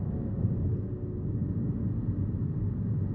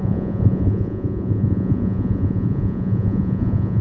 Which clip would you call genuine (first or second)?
first